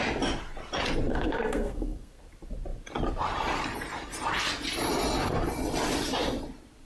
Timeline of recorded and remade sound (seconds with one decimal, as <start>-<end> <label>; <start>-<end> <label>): 0.0-1.1 recorded; 1.1-2.2 remade; 2.2-6.8 recorded